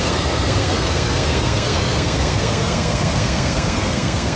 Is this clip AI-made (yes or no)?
yes